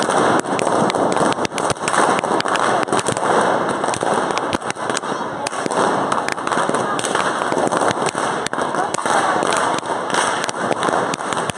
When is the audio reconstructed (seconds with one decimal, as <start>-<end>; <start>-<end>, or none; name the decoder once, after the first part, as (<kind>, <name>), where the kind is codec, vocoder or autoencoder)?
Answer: none